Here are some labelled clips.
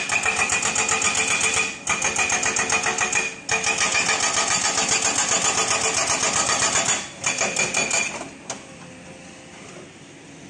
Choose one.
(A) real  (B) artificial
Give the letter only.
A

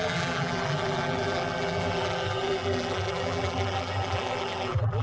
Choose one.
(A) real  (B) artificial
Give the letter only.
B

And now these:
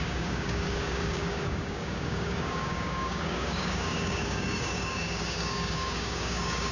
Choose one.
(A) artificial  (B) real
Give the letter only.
A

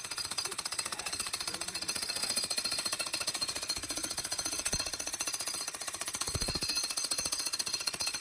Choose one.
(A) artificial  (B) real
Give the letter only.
A